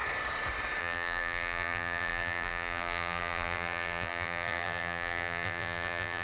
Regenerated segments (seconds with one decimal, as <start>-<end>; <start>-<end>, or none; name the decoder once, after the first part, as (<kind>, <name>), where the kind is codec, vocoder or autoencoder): 0.8-6.2 (vocoder, BigVGAN v2)